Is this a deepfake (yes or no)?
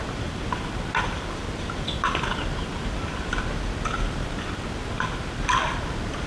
yes